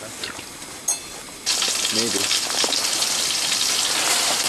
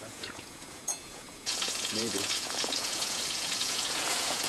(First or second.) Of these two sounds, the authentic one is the first